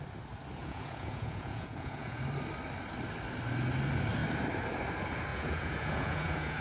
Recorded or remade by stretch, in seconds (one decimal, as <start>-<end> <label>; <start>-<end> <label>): 0.0-0.6 recorded; 0.6-2.2 remade; 2.2-5.3 recorded; 5.3-6.6 remade